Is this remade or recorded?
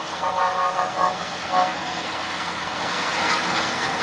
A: remade